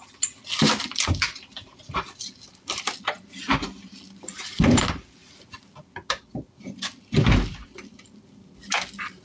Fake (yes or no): no